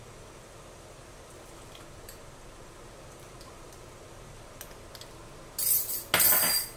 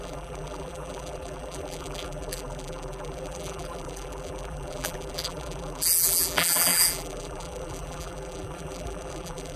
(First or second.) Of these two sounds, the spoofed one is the second